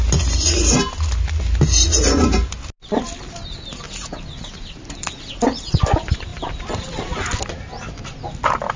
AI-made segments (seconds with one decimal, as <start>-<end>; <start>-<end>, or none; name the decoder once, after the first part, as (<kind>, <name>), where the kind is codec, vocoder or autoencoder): none